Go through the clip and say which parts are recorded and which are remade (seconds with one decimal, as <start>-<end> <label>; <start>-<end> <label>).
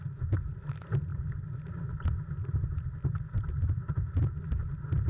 0.0-5.1 recorded